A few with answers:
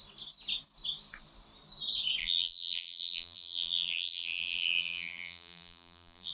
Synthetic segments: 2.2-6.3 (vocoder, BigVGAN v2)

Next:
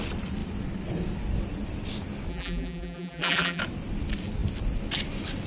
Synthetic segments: 2.3-3.6 (vocoder, BigVGAN v2)